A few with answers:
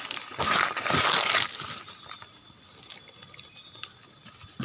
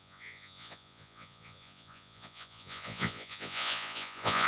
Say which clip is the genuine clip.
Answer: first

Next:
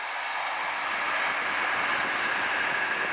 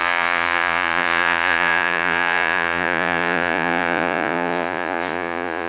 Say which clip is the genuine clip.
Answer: first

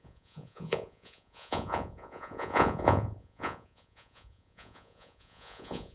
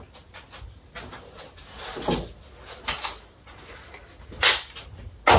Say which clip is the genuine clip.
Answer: second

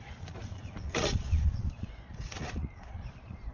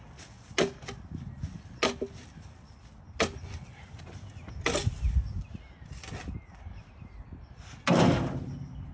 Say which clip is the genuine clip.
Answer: second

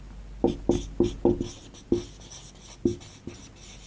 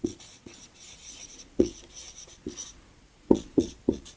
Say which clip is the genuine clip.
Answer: first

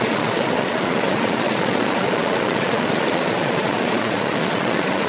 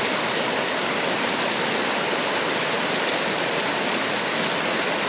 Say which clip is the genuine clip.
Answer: second